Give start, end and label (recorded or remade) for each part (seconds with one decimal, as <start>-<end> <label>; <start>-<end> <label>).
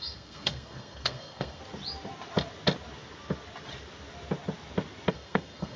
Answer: 0.0-1.6 remade; 1.6-5.1 recorded; 5.1-5.8 remade